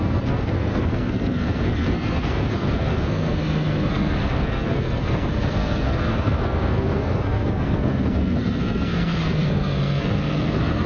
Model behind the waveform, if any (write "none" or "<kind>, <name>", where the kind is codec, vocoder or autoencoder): codec, SNAC